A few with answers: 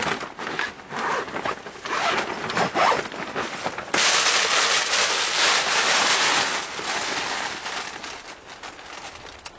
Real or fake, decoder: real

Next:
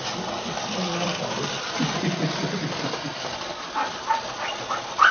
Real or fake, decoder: fake, vocoder, BigVGAN v2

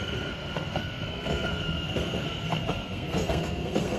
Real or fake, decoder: fake, codec, SNAC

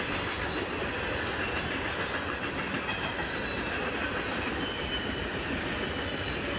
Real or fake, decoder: real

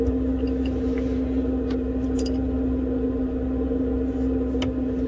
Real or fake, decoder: real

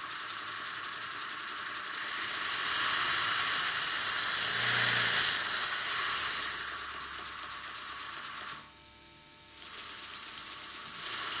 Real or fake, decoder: real